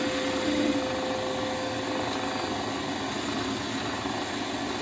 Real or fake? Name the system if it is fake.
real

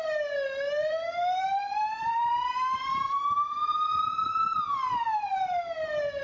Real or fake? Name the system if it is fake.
fake, vocoder, BigVGAN v2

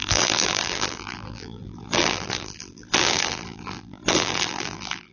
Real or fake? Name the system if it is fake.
fake, vocoder, BigVGAN v2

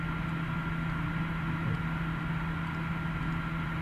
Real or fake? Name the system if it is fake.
real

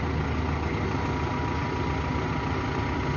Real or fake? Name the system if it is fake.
real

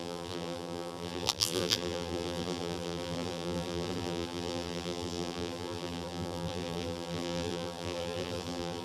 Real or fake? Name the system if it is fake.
fake, vocoder, BigVGAN v2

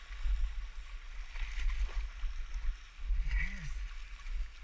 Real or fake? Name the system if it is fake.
real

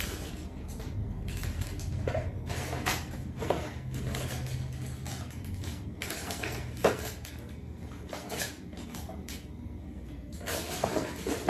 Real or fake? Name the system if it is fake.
fake, codec, SNAC